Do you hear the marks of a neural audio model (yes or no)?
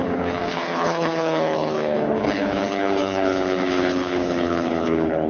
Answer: yes